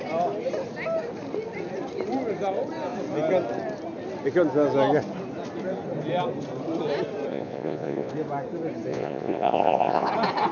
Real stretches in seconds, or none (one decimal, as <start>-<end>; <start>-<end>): 0.0-7.3; 8.1-8.9; 10.1-10.5